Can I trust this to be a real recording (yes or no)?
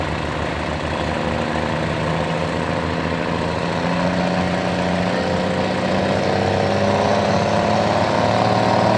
yes